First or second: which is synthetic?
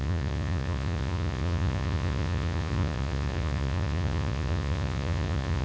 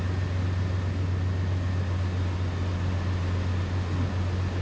first